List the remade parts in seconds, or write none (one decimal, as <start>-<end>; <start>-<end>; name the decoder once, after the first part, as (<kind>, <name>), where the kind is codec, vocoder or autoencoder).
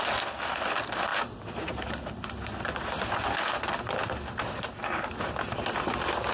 none